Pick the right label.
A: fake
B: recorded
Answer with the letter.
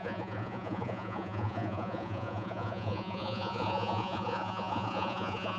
A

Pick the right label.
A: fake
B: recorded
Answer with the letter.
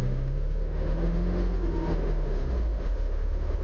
A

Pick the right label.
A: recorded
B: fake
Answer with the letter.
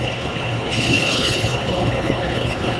B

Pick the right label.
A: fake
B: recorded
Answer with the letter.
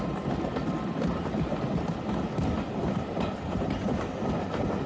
B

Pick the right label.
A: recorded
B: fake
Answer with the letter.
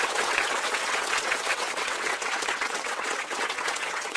B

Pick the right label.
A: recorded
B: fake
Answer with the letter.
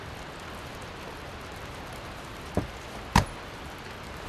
A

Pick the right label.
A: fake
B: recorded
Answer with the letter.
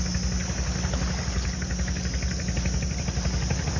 B